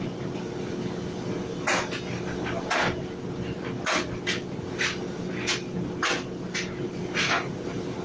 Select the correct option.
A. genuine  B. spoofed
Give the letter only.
A